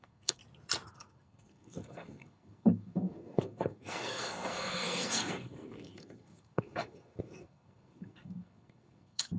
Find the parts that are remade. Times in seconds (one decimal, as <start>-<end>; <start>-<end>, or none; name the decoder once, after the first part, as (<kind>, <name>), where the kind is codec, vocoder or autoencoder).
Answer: 0.0-0.4 (codec, SNAC); 0.9-9.4